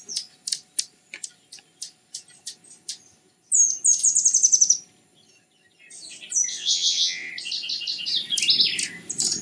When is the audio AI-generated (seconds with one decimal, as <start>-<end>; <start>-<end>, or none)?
6.5-7.3